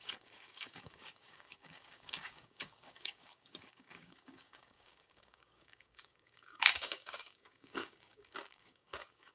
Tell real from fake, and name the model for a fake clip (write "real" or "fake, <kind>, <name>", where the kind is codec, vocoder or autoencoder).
fake, codec, DAC